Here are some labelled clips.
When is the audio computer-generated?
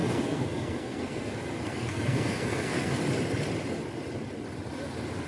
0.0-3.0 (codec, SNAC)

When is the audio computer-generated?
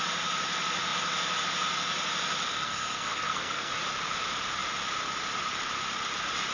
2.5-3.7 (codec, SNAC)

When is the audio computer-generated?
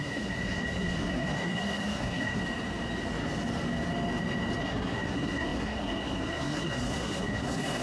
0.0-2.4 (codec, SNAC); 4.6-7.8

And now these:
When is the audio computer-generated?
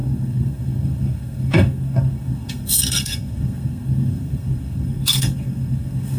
0.0-6.2 (codec, SNAC)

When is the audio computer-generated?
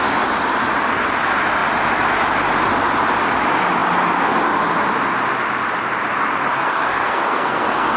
6.5-8.0 (codec, SNAC)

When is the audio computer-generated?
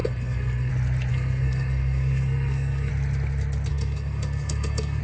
0.0-0.7 (codec, SNAC); 1.1-2.9; 3.7-5.0